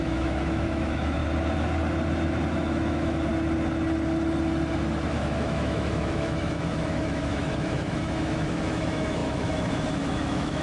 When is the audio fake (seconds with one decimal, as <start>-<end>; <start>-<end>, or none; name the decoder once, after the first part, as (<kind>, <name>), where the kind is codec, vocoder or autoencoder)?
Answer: 0.0-1.2 (autoencoder, DAC-VAE); 2.5-3.3; 5.1-10.6